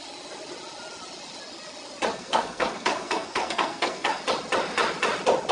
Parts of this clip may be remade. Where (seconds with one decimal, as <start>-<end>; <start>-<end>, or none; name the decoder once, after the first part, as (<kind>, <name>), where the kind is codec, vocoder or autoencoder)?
2.1-4.2 (codec, SNAC)